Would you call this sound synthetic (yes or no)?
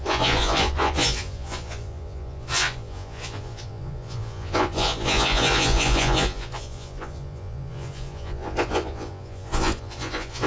yes